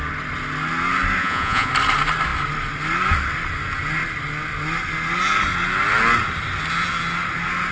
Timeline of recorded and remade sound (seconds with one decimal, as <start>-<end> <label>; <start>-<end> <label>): 0.0-1.2 recorded; 1.2-1.7 remade; 1.7-7.7 recorded